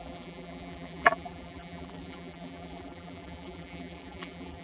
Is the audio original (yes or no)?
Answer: no